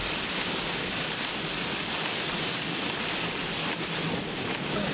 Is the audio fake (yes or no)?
yes